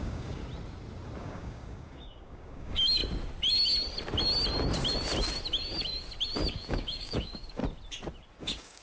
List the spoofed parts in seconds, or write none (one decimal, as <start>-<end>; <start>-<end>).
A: 0.0-0.4; 1.2-3.0; 6.5-7.6; 8.4-8.8